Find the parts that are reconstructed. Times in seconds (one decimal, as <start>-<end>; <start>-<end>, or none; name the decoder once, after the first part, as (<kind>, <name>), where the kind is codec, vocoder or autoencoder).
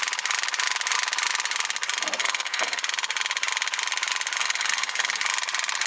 2.2-2.8 (codec, SNAC); 4.4-5.2